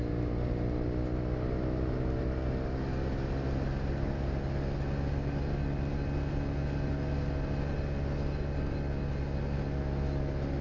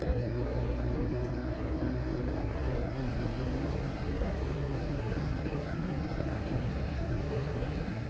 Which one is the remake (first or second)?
second